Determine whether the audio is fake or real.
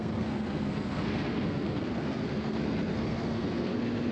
fake